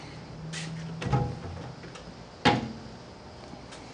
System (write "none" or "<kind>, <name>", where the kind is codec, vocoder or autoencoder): none